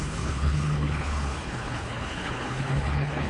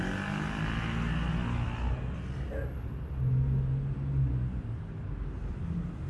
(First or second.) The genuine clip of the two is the second